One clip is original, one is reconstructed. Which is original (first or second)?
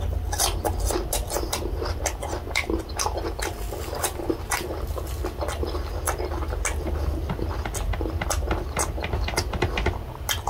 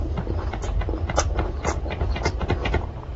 first